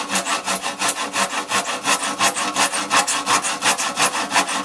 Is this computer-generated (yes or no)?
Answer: no